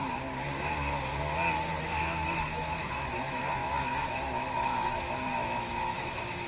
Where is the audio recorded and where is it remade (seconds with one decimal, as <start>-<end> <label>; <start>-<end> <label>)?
0.0-1.8 recorded; 1.8-6.5 remade